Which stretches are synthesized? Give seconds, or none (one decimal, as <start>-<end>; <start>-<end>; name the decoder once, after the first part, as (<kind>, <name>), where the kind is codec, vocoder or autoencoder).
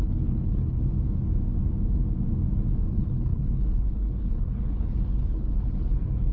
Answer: 0.0-0.8 (codec, HILCodec); 2.9-6.3